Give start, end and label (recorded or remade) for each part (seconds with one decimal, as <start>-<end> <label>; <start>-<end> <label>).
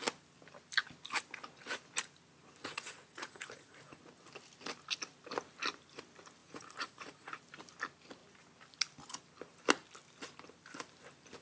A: 0.0-2.6 recorded; 2.6-4.0 remade; 4.0-6.4 recorded; 6.4-7.4 remade; 7.4-11.4 recorded